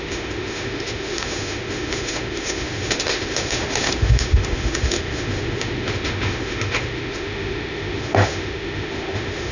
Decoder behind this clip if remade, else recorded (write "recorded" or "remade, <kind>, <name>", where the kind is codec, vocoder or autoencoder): remade, autoencoder, DAC-VAE